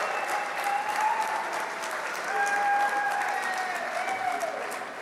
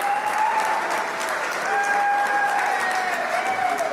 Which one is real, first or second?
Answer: second